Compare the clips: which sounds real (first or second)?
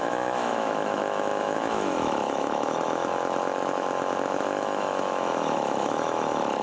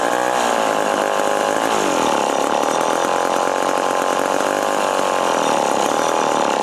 second